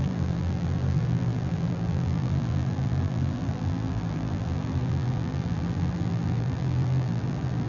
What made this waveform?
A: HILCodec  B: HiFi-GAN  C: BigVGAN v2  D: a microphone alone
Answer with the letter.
C